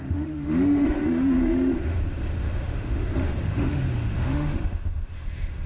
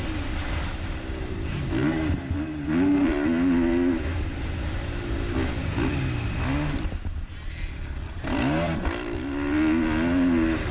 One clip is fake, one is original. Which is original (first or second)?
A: second